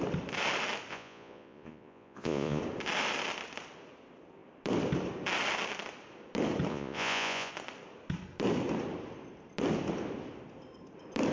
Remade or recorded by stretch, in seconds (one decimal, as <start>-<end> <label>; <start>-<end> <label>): 0.0-0.9 recorded; 0.9-2.6 remade; 2.6-6.7 recorded; 6.7-7.5 remade; 7.5-11.3 recorded